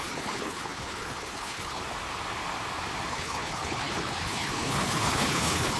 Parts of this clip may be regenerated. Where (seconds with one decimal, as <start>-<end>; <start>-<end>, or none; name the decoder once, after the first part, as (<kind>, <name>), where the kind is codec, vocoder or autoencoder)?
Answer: 0.0-1.8 (codec, HILCodec); 3.1-5.8

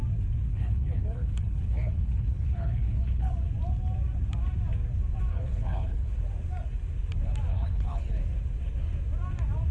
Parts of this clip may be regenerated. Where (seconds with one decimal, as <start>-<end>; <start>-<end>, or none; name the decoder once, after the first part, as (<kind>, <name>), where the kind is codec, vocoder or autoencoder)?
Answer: 0.5-3.3 (codec, HILCodec); 5.3-6.2; 7.5-8.2

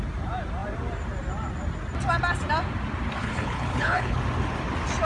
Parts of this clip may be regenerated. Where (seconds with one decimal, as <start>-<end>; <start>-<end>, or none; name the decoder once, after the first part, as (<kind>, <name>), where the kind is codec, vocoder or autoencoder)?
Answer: 3.2-4.2 (codec, HILCodec)